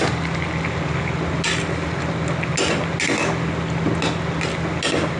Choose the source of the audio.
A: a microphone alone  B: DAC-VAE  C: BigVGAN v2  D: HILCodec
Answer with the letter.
A